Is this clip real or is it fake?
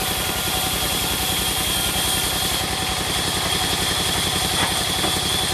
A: real